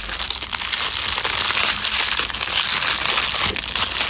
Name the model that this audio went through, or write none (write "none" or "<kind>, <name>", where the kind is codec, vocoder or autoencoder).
none